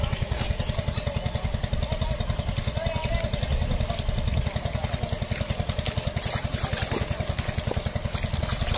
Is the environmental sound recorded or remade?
recorded